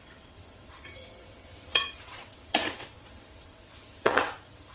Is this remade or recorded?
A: remade